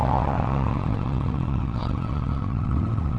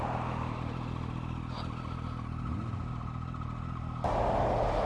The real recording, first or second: second